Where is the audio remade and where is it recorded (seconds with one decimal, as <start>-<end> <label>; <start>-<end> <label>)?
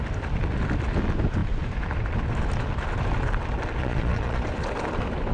0.0-3.8 recorded; 3.8-4.4 remade; 4.4-5.3 recorded